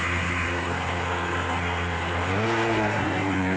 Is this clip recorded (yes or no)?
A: no